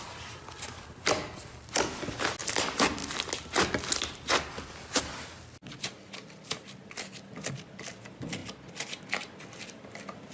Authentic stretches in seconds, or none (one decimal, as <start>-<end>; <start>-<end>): 0.0-10.3